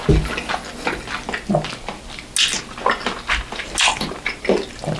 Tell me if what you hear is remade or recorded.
recorded